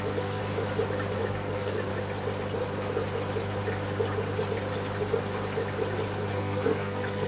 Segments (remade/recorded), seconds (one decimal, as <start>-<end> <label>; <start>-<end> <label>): 0.0-0.4 remade; 0.4-1.2 recorded; 1.2-1.9 remade; 1.9-6.3 recorded; 6.3-7.3 remade